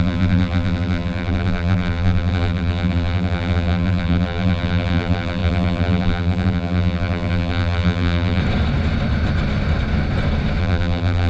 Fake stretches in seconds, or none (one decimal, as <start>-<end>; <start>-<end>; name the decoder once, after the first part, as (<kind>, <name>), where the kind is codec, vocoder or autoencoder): 0.0-8.4 (vocoder, BigVGAN v2); 10.6-11.3